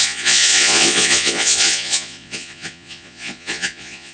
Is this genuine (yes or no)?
no